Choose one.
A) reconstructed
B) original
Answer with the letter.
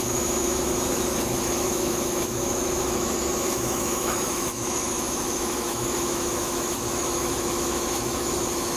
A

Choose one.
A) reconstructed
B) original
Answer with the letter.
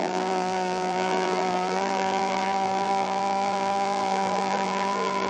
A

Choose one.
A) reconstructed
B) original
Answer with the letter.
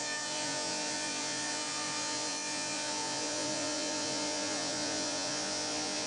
A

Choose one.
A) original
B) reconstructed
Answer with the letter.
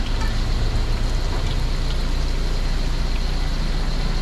A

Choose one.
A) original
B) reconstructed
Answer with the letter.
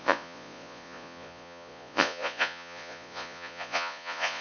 B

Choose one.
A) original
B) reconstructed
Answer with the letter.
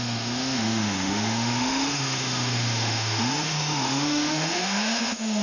B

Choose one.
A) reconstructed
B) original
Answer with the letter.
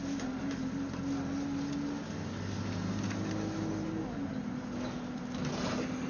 B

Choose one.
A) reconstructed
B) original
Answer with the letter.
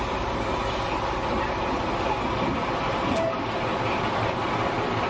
B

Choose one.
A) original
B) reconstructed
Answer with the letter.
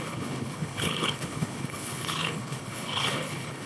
B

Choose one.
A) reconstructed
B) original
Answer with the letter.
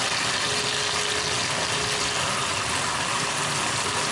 B